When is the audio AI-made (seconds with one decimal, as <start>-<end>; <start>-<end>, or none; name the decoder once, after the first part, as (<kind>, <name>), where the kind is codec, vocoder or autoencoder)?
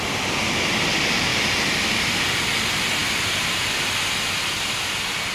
none